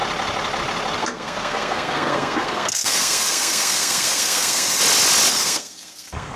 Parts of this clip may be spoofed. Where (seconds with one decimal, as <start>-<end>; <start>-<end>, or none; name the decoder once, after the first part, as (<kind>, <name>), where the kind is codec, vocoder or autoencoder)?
1.0-4.8 (codec, SNAC); 5.3-6.4